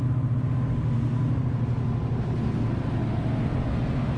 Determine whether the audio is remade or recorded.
recorded